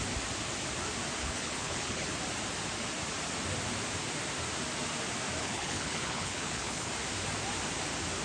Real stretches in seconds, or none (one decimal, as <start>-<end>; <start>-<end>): 0.0-1.2; 2.1-5.4; 6.9-8.2